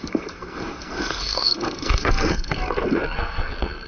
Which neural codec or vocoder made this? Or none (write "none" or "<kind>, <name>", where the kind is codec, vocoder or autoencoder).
codec, SNAC